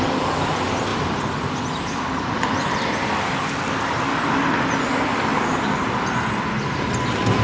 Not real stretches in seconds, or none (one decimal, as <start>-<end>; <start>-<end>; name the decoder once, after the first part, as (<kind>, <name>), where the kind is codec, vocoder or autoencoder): 0.9-4.3 (vocoder, BigVGAN v2)